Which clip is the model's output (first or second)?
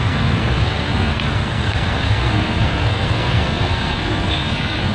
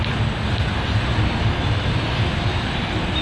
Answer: first